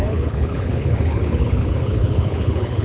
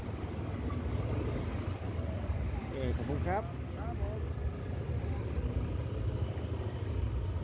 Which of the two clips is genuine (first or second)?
second